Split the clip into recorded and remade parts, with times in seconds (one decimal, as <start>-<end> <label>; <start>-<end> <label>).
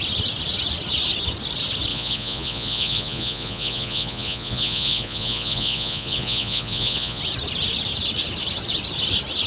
0.0-1.9 recorded; 1.9-7.2 remade; 7.2-9.5 recorded